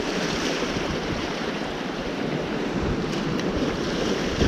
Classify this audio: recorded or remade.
remade